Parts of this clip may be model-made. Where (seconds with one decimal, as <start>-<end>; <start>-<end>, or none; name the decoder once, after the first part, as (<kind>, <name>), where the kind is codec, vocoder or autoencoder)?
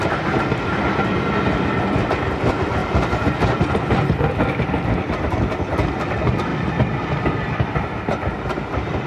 none